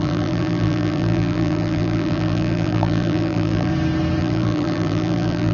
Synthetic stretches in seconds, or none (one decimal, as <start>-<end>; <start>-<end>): 0.0-3.7; 4.2-5.5